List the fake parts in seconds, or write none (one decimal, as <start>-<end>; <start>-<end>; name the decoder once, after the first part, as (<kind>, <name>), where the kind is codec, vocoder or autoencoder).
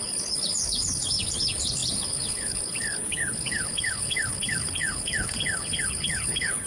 0.0-6.7 (codec, HILCodec)